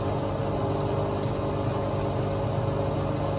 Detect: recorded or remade recorded